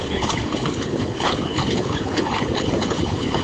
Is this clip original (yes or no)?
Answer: no